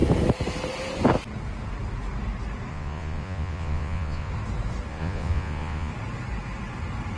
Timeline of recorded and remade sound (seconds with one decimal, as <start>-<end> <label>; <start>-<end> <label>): 0.0-2.7 recorded; 2.7-4.3 remade; 4.3-4.9 recorded; 4.9-5.9 remade; 5.9-7.2 recorded